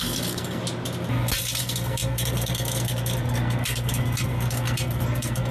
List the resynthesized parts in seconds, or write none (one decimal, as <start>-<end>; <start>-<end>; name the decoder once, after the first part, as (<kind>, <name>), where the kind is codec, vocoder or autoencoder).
0.0-0.6 (codec, SNAC); 1.6-5.5